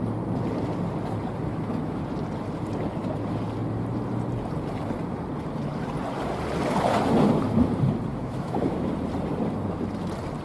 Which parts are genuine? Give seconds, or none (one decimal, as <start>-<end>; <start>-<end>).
0.0-1.5; 2.0-8.1; 8.9-10.4